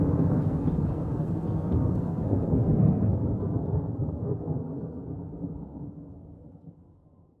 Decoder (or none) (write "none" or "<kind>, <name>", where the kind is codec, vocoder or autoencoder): codec, SNAC